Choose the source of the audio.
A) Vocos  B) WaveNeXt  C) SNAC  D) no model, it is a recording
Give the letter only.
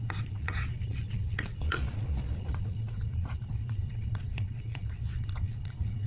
A